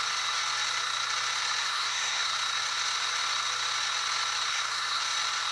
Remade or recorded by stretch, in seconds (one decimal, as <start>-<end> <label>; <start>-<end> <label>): 0.0-1.6 recorded; 1.6-2.3 remade; 2.3-4.5 recorded; 4.5-5.0 remade; 5.0-5.5 recorded